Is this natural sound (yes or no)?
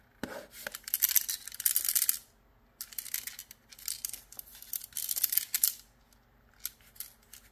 yes